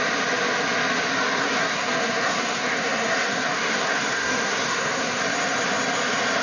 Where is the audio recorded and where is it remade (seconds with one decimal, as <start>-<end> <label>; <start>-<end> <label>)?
0.0-1.4 recorded; 1.4-5.2 remade; 5.2-6.4 recorded